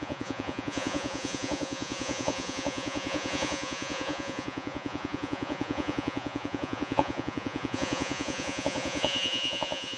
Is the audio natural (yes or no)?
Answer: no